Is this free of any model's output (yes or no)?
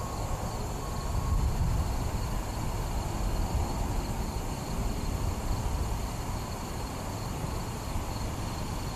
yes